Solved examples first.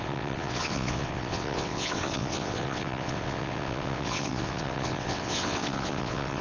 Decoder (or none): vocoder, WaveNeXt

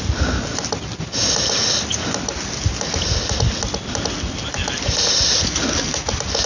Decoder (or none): none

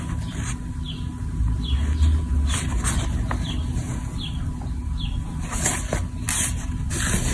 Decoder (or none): none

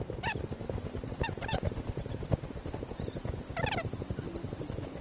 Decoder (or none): none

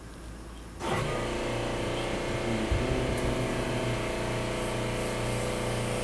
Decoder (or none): none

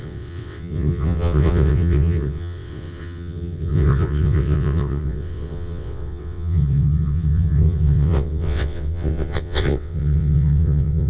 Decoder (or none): vocoder, WaveNeXt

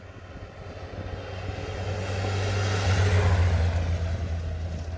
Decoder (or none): none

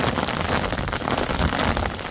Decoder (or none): none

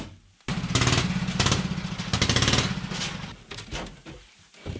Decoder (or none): none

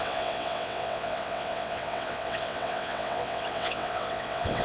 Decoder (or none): vocoder, WaveNeXt